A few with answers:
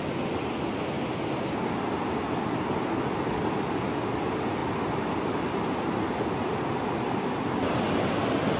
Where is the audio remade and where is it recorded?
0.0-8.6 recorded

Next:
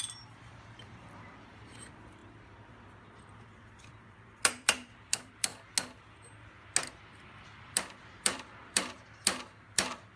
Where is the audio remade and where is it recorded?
0.0-2.2 remade; 2.2-3.3 recorded; 3.3-5.5 remade; 5.5-7.7 recorded; 7.7-10.2 remade

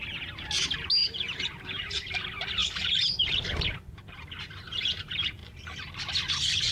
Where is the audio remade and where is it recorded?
0.0-1.0 recorded; 1.0-2.2 remade; 2.2-2.6 recorded; 2.6-3.5 remade; 3.5-6.7 recorded

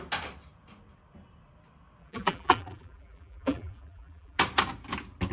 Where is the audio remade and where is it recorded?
0.0-2.0 recorded; 2.0-4.4 remade; 4.4-5.3 recorded

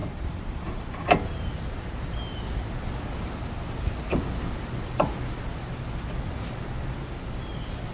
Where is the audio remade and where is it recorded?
0.0-0.8 remade; 0.8-7.9 recorded

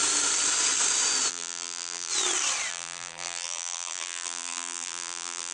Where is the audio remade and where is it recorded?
0.0-1.3 recorded; 1.3-2.1 remade; 2.1-2.7 recorded; 2.7-5.5 remade

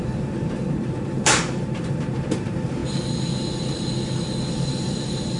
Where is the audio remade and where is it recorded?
0.0-2.8 remade; 2.8-4.5 recorded; 4.5-5.4 remade